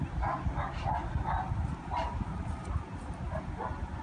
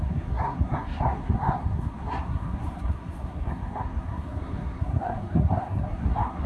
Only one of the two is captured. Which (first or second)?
first